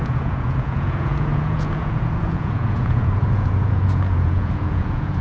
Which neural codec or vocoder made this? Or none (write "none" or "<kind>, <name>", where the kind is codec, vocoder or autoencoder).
vocoder, Vocos